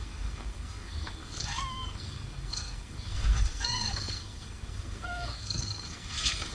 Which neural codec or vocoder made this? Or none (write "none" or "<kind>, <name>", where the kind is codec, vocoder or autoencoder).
codec, SNAC